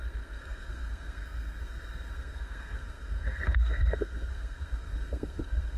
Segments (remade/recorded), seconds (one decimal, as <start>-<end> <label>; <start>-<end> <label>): 0.0-5.8 remade